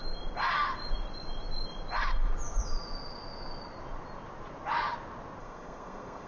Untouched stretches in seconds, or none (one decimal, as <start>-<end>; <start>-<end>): 0.0-5.4